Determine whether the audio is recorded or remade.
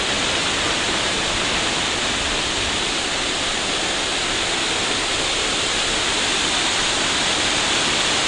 recorded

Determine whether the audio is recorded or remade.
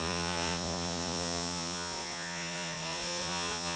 remade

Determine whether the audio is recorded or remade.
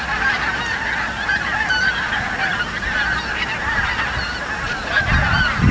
recorded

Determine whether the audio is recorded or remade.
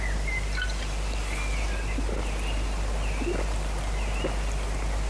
recorded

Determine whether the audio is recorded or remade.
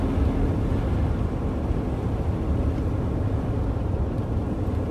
recorded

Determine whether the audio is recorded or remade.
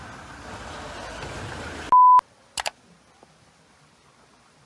recorded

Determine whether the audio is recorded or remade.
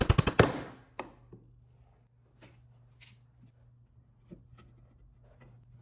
recorded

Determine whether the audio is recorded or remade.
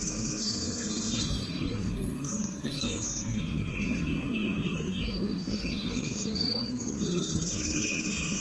remade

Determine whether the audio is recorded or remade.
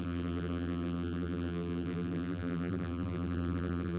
remade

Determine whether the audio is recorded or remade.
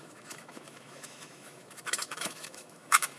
remade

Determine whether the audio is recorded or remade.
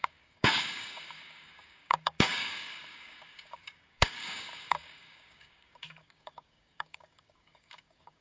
remade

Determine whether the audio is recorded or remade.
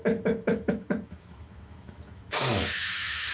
remade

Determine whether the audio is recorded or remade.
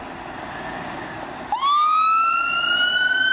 recorded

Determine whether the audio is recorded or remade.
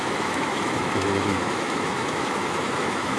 remade